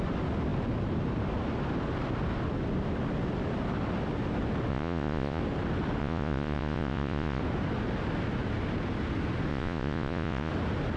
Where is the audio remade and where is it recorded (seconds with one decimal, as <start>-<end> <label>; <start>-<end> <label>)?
0.0-4.7 recorded; 4.7-5.4 remade; 5.4-6.0 recorded; 6.0-7.4 remade; 7.4-9.5 recorded; 9.5-10.5 remade; 10.5-11.0 recorded